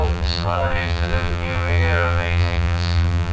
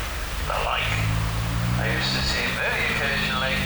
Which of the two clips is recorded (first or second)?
second